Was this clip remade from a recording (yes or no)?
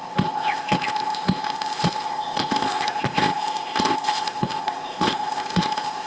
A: yes